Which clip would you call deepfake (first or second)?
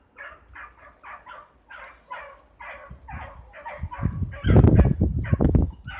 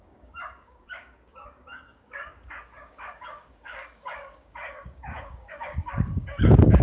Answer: second